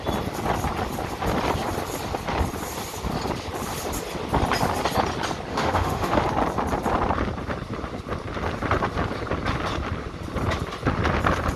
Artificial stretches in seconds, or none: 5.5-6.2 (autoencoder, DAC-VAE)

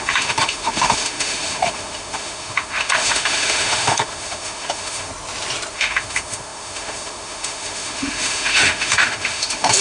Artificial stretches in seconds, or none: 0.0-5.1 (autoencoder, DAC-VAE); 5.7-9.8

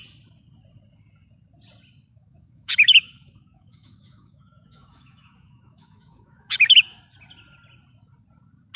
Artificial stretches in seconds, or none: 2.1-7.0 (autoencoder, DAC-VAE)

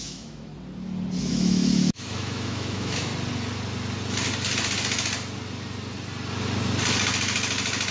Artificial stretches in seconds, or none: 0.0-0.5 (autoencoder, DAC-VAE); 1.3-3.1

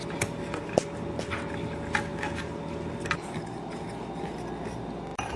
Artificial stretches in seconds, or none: none

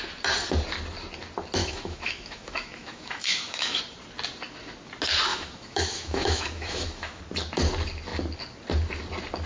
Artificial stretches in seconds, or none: 1.6-3.8 (autoencoder, DAC-VAE); 5.3-7.2